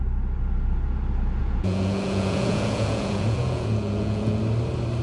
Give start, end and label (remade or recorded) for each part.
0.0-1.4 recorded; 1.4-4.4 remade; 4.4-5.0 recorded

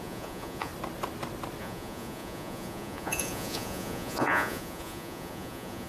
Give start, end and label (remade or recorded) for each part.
0.0-0.7 remade; 0.7-1.6 recorded; 1.6-5.9 remade

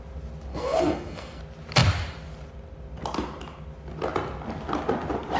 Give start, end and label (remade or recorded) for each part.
0.0-0.5 recorded; 0.5-1.4 remade; 1.4-5.4 recorded